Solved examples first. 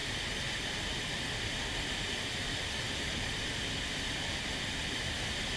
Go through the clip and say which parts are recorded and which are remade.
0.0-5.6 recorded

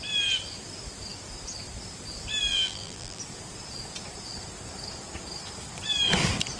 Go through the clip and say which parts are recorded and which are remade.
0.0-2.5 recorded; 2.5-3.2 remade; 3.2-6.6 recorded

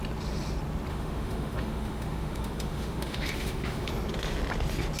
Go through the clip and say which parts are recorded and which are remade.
0.0-0.9 recorded; 0.9-3.9 remade; 3.9-5.0 recorded

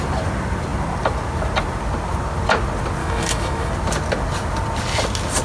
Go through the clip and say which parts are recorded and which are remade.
0.0-3.0 recorded; 3.0-3.7 remade; 3.7-5.4 recorded

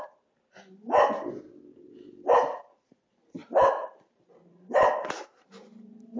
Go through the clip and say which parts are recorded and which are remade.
0.0-3.4 recorded; 3.4-6.2 remade